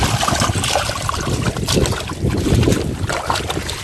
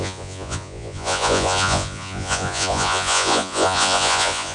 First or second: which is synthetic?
second